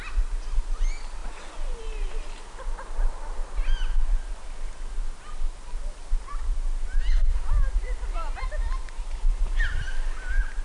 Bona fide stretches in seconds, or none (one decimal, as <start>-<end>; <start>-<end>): 0.0-10.6